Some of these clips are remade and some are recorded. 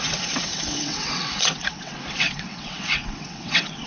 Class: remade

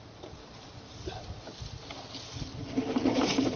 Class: recorded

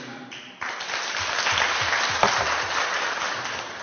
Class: recorded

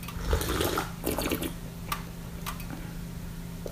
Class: recorded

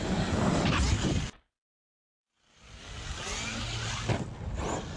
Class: recorded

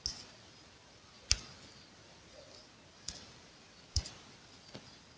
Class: recorded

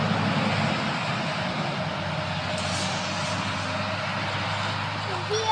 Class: recorded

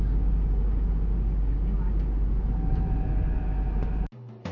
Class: recorded